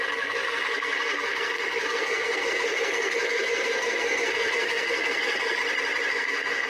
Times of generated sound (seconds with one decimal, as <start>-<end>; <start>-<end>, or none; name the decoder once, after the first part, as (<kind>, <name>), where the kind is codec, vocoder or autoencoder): 0.0-5.6 (codec, SNAC); 6.1-6.7